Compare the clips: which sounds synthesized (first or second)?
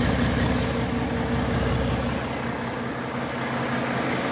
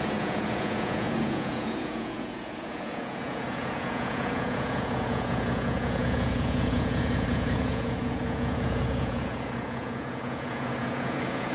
second